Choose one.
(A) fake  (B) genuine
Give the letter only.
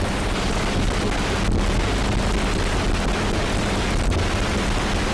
B